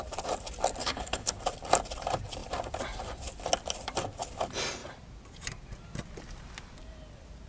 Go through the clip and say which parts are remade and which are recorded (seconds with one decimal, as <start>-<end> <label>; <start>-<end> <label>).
0.0-0.8 recorded; 0.8-1.3 remade; 1.3-7.5 recorded